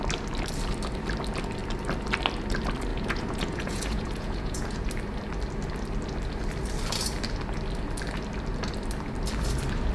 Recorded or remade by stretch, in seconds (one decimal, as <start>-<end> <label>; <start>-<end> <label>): 0.0-2.9 recorded; 2.9-4.9 remade; 4.9-9.9 recorded